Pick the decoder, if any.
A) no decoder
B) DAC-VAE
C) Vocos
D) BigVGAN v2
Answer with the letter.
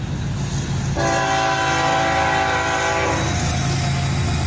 A